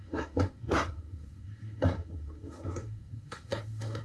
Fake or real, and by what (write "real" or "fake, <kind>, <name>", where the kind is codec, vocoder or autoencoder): fake, codec, SNAC